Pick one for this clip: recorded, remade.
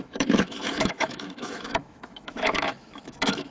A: remade